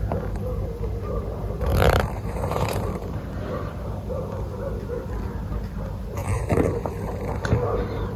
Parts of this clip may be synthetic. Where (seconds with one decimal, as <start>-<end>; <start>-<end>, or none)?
1.7-3.2; 6.2-6.9